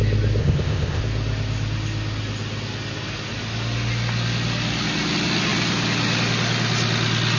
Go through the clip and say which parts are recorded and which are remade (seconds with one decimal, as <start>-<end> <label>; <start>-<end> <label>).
0.0-0.4 recorded; 0.4-1.0 remade; 1.0-7.4 recorded